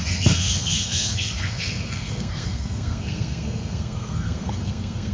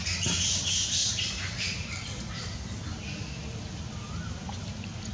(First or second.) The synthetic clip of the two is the first